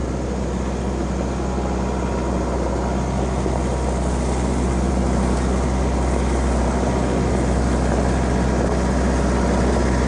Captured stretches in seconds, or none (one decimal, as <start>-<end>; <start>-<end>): 0.0-10.1